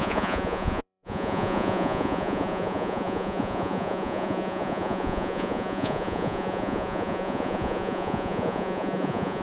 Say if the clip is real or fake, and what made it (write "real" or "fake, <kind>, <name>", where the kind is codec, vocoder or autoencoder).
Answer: fake, vocoder, Vocos